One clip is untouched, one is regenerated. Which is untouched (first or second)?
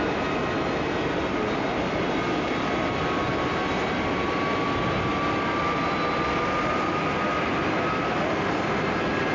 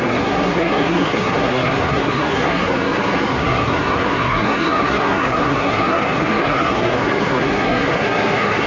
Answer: first